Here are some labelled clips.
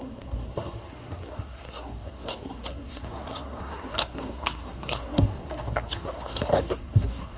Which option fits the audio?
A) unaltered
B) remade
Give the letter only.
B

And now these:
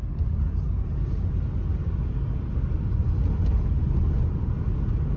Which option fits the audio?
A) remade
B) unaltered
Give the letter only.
B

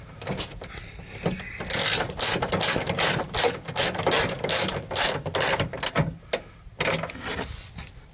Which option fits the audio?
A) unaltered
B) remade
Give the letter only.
A